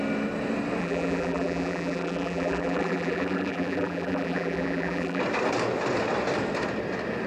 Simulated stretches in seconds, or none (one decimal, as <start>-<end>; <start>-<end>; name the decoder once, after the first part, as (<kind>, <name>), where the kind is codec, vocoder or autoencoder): 0.8-5.2 (vocoder, BigVGAN v2)